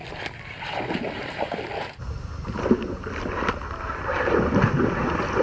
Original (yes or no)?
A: yes